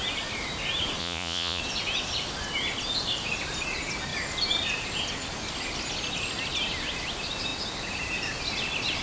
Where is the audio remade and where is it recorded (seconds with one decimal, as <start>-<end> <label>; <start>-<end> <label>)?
0.0-1.0 recorded; 1.0-1.6 remade; 1.6-9.0 recorded